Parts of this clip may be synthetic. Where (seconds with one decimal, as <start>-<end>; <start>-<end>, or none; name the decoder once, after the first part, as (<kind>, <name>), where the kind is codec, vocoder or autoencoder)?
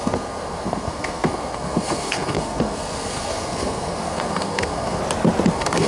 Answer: 0.0-5.0 (codec, SNAC); 5.5-5.9